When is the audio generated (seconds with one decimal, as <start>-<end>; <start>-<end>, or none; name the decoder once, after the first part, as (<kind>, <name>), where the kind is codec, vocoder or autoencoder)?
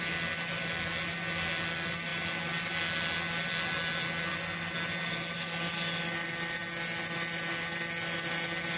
none